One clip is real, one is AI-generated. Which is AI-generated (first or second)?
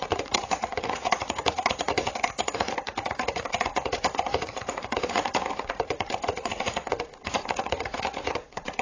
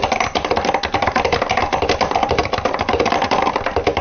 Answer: first